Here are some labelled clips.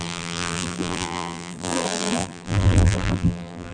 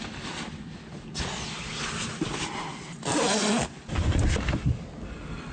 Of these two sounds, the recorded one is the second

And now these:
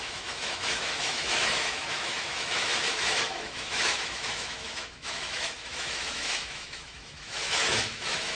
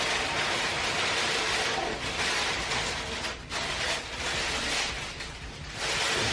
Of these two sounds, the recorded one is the second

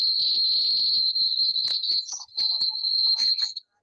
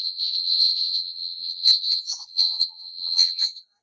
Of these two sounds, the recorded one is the first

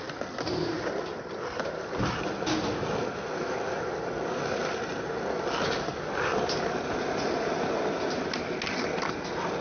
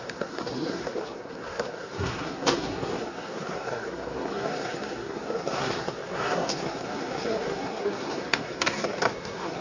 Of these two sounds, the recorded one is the first